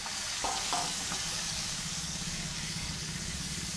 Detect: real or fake fake